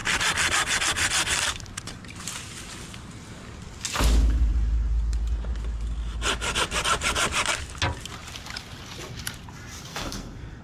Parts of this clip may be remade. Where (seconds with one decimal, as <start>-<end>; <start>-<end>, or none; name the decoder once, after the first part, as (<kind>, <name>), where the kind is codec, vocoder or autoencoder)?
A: 9.9-10.6 (codec, SNAC)